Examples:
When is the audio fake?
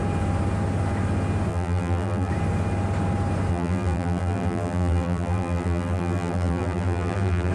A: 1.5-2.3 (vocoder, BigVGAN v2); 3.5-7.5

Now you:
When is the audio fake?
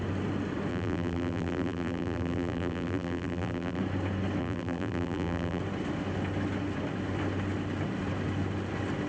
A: 0.7-3.8 (vocoder, BigVGAN v2); 4.4-5.6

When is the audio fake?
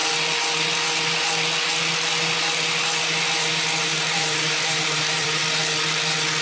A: 3.8-5.4 (vocoder, BigVGAN v2)